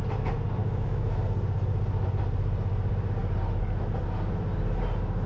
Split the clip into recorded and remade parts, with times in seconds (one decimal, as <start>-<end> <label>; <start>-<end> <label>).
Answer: 0.0-0.6 recorded; 0.6-1.2 remade; 1.2-5.3 recorded

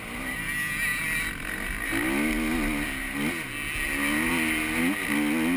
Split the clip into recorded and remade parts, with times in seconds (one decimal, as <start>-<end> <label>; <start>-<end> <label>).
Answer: 0.0-5.6 recorded

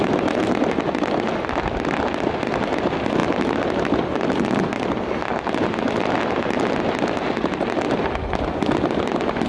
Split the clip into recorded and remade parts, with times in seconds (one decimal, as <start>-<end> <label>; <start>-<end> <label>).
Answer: 0.0-9.5 recorded

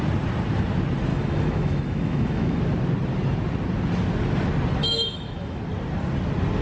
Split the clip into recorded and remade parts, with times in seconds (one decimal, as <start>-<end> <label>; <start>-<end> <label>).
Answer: 0.0-1.1 recorded; 1.1-2.6 remade; 2.6-4.8 recorded; 4.8-5.6 remade; 5.6-6.6 recorded

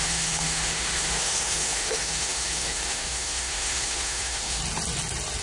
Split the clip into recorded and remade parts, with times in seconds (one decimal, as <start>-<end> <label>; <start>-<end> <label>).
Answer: 0.0-4.6 remade; 4.6-5.4 recorded

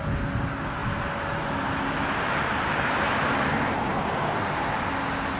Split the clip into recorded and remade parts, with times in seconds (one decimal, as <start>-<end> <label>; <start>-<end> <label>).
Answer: 0.0-5.4 recorded

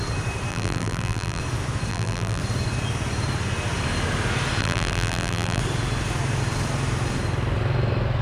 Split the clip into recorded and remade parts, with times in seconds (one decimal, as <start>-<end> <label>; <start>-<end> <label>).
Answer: 0.0-0.5 recorded; 0.5-1.4 remade; 1.4-1.9 recorded; 1.9-2.4 remade; 2.4-4.6 recorded; 4.6-5.6 remade; 5.6-8.2 recorded

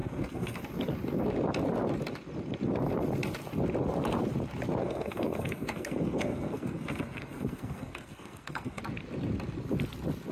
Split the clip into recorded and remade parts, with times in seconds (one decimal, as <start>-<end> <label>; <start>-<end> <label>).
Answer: 0.0-0.6 remade; 0.6-4.8 recorded; 4.8-8.8 remade; 8.8-10.3 recorded